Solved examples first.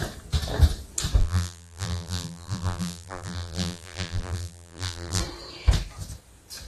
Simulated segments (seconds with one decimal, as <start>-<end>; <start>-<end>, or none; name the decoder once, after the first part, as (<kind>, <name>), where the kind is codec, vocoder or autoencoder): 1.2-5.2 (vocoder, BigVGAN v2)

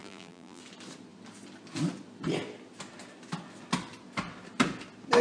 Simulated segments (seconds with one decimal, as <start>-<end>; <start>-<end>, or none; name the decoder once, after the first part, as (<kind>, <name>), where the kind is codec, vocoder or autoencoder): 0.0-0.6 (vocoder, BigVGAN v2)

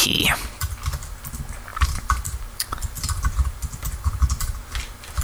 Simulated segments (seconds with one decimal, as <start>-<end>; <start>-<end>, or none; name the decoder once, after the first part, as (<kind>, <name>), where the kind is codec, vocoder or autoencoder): 1.7-4.8 (vocoder, BigVGAN v2)

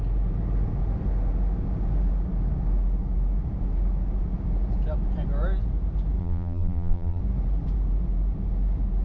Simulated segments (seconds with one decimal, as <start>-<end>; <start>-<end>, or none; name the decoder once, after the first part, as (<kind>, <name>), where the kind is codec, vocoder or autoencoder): 6.2-7.2 (vocoder, BigVGAN v2)

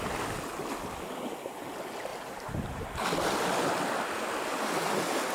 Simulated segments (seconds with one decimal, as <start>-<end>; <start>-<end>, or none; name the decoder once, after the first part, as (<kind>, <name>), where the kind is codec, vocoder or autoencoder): 2.1-3.0 (vocoder, BigVGAN v2)